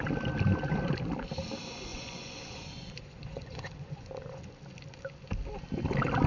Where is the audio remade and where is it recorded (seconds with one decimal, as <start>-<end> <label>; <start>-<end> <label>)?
0.0-1.9 recorded; 1.9-4.4 remade; 4.4-6.3 recorded